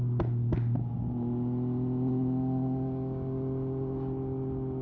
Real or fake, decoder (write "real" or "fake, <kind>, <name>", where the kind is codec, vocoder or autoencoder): real